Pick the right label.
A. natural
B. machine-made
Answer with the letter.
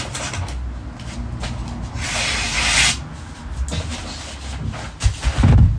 A